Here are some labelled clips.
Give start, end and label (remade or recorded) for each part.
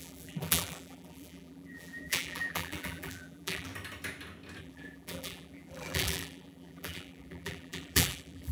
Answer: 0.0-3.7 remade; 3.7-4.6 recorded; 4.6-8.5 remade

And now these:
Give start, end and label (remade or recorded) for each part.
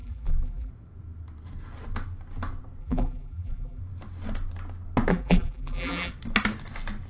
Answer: 0.0-0.7 remade; 0.7-2.8 recorded; 2.8-3.8 remade; 3.8-5.1 recorded; 5.1-6.1 remade; 6.1-7.1 recorded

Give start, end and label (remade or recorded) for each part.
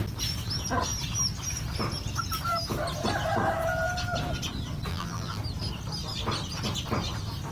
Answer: 0.0-4.9 recorded; 4.9-5.4 remade; 5.4-7.5 recorded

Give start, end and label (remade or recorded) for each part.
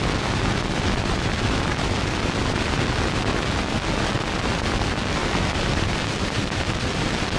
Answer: 0.0-5.2 recorded; 5.2-6.8 remade; 6.8-7.4 recorded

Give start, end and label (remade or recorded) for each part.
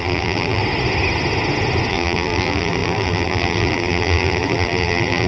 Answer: 0.0-0.6 remade; 0.6-1.9 recorded; 1.9-5.3 remade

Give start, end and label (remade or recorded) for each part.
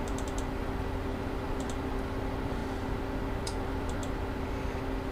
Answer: 0.0-2.6 remade; 2.6-3.4 recorded; 3.4-4.0 remade; 4.0-4.6 recorded; 4.6-5.1 remade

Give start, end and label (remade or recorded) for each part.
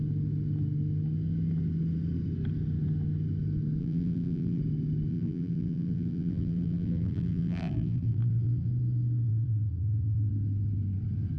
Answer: 0.0-3.8 recorded; 3.8-4.6 remade; 4.6-5.1 recorded; 5.1-8.7 remade; 8.7-9.3 recorded; 9.3-10.3 remade; 10.3-11.4 recorded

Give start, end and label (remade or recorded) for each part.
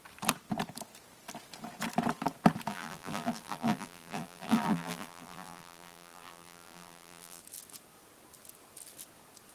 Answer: 0.0-2.7 recorded; 2.7-7.4 remade; 7.4-9.5 recorded